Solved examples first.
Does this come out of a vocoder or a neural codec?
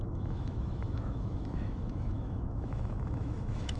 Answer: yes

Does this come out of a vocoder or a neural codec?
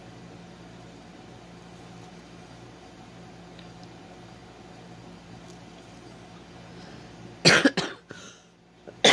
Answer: no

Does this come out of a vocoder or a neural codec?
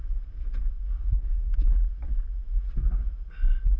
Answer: no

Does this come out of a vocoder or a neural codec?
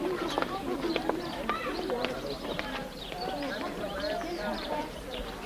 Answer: yes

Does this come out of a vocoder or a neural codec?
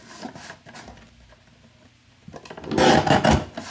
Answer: no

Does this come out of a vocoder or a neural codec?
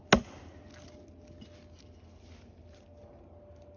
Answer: no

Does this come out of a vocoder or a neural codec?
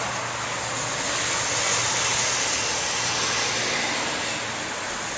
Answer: no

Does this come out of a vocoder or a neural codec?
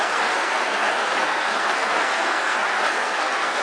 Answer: yes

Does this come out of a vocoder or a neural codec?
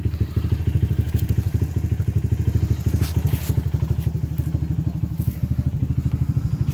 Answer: no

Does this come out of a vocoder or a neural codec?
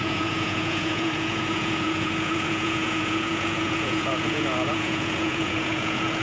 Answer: yes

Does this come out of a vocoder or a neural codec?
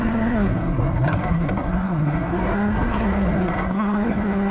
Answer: yes